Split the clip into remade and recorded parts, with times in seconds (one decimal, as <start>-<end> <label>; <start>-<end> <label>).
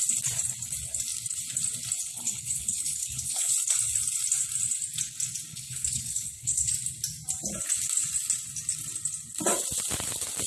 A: 0.0-2.1 recorded; 2.1-3.5 remade; 3.5-5.5 recorded; 5.5-6.7 remade; 6.7-10.5 recorded